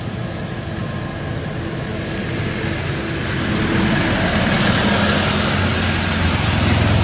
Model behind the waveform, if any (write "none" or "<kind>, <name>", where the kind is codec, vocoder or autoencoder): none